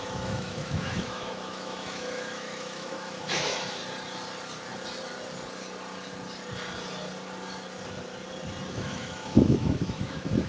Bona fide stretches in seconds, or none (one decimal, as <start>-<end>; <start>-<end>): 3.8-8.7